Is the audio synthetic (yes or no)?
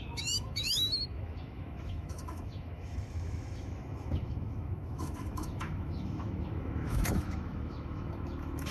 yes